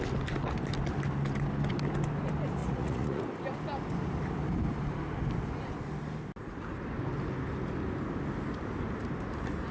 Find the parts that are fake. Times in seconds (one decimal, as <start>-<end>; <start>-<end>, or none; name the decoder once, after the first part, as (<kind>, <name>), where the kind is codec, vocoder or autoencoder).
2.6-3.2 (vocoder, Vocos)